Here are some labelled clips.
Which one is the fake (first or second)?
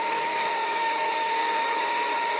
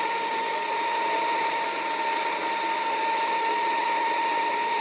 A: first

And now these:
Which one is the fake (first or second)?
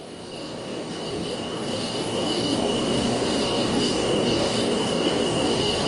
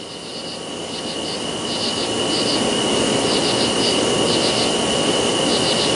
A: first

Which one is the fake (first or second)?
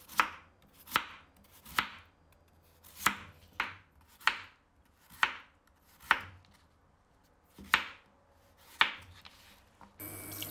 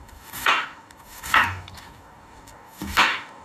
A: second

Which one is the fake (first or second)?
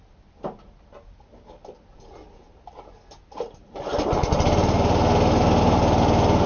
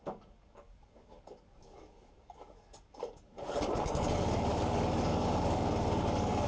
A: second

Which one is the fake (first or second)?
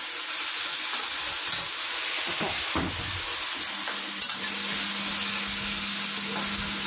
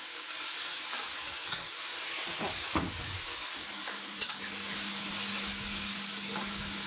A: second